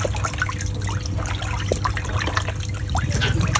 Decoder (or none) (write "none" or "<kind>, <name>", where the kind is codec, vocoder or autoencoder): none